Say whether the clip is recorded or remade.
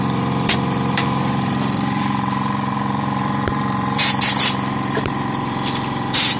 remade